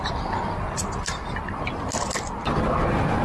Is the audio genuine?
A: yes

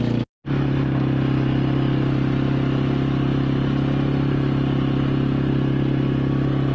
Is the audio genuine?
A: yes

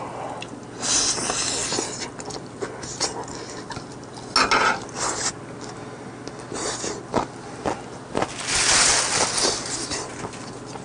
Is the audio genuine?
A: yes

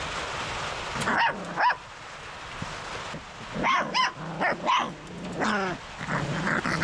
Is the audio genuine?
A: yes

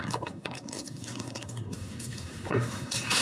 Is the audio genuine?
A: no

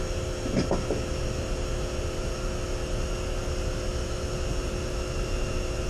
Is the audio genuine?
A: yes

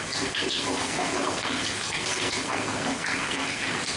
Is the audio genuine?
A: no